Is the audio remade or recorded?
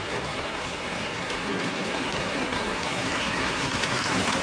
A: remade